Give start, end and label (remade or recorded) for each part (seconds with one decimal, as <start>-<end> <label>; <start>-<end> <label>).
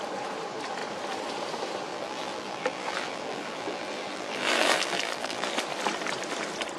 0.0-1.9 recorded; 1.9-5.5 remade; 5.5-6.8 recorded